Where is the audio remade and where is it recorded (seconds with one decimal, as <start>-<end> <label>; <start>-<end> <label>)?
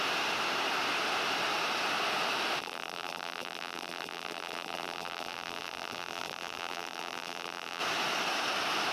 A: 0.0-2.6 recorded; 2.6-7.8 remade; 7.8-8.9 recorded